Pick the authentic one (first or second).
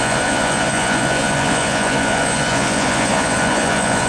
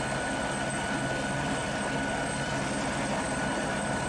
second